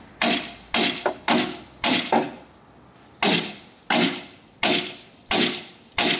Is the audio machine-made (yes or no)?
no